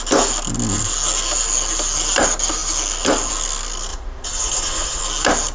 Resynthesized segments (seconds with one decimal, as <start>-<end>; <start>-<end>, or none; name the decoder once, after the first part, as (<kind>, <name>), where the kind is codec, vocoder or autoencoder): 3.9-5.0 (vocoder, Vocos)